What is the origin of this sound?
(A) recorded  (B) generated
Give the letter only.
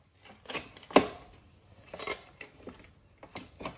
A